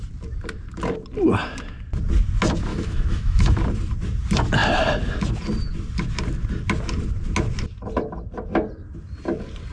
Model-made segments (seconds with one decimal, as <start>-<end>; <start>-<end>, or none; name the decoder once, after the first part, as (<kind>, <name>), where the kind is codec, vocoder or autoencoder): 2.7-3.5 (autoencoder, DAC-VAE)